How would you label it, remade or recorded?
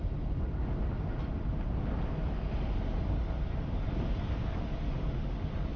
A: recorded